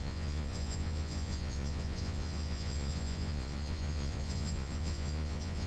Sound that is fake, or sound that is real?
fake